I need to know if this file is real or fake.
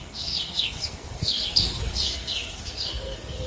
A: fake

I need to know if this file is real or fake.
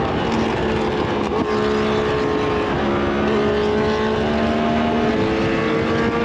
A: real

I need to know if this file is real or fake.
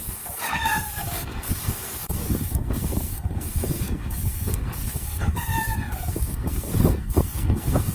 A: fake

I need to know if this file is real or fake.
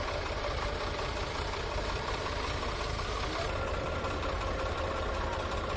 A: real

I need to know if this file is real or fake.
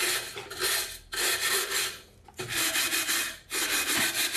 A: real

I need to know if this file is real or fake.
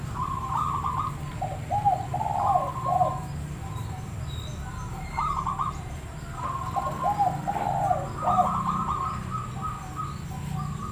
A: real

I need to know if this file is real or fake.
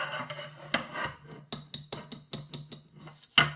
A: real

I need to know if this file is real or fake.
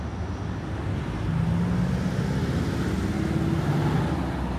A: real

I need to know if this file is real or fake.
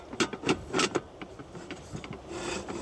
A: real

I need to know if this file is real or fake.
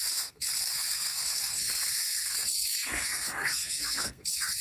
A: fake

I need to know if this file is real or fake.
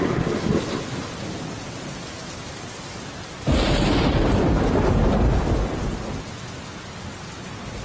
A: real